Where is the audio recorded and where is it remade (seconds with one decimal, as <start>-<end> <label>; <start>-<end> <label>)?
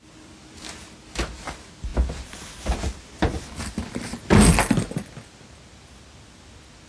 0.0-6.9 recorded